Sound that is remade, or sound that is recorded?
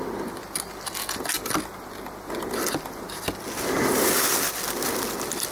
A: recorded